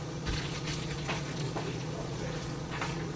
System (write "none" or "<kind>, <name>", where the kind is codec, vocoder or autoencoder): vocoder, Vocos